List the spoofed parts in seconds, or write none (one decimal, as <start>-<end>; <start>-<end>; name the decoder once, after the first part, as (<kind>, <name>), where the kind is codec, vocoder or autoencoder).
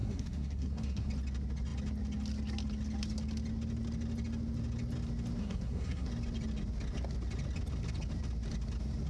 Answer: 0.0-1.1 (codec, SNAC); 5.4-6.1